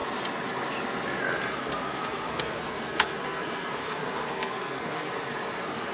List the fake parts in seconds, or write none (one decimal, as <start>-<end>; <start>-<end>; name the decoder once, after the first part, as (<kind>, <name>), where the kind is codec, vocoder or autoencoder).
1.6-5.1 (codec, SNAC)